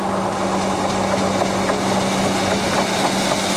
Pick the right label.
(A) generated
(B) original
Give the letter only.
B